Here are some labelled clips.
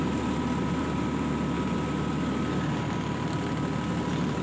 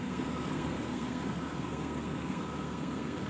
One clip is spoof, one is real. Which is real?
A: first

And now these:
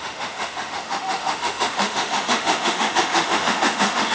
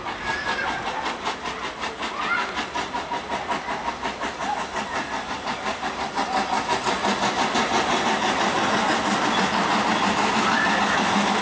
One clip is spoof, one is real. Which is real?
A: second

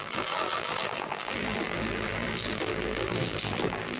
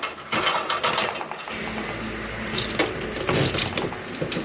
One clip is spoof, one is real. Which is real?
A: second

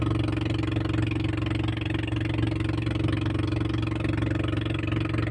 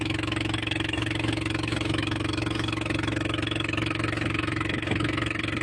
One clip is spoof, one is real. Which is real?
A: first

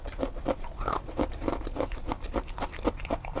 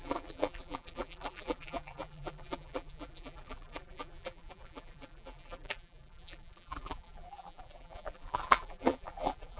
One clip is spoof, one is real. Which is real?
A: first